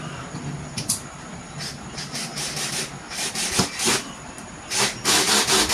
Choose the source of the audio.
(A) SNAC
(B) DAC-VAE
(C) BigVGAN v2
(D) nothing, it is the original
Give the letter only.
D